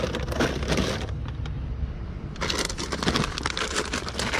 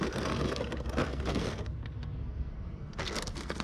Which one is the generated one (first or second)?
second